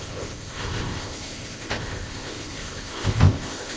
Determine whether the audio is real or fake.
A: fake